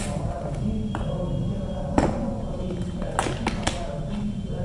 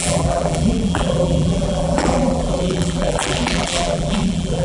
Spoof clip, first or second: second